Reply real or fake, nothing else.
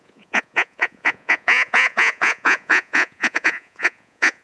fake